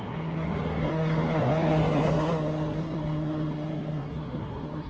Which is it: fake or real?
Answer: fake